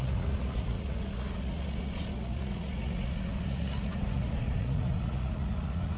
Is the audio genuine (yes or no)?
no